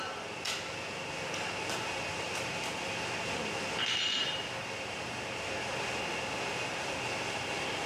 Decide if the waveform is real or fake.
real